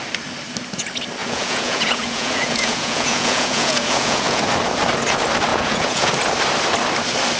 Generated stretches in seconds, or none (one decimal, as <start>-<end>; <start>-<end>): 1.2-4.4; 5.5-6.1